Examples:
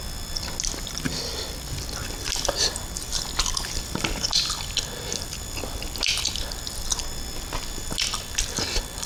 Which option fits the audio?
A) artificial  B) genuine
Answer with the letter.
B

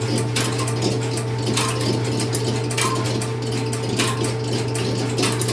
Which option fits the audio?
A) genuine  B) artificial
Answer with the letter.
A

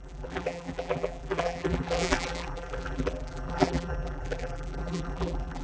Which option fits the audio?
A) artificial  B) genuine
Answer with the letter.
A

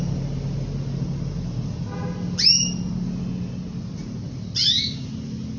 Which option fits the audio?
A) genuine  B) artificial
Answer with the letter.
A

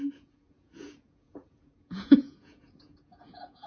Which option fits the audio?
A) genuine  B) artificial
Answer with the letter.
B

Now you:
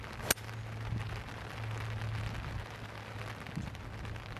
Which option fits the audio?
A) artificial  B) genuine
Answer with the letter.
B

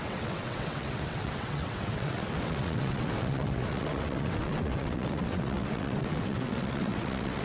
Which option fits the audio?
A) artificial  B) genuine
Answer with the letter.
A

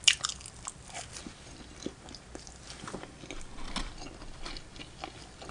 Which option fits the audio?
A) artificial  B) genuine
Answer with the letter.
B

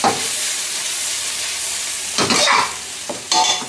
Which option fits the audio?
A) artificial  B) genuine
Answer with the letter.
A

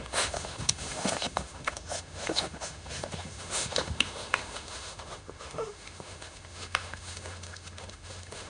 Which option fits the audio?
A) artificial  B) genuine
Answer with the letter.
A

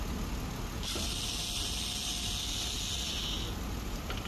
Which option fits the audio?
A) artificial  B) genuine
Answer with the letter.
B